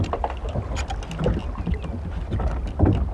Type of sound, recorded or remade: recorded